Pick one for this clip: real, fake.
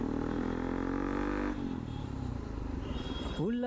real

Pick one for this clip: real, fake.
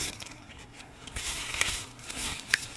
fake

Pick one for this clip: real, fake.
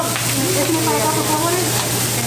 real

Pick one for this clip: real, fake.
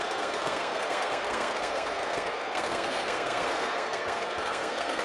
fake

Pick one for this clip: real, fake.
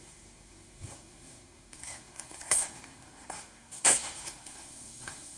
fake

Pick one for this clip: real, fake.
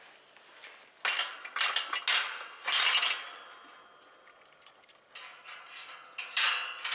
real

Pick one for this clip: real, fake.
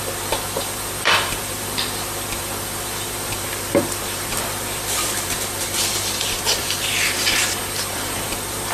fake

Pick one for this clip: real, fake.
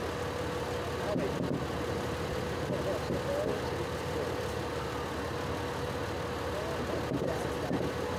real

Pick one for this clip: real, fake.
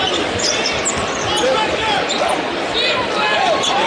real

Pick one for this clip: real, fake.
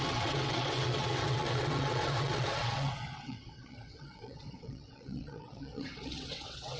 fake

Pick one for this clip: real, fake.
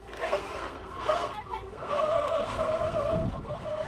fake